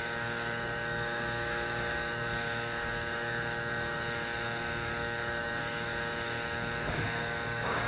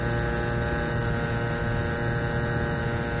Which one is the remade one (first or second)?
first